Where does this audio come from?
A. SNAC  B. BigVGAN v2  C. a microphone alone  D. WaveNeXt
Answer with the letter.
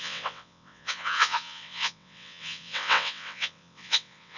D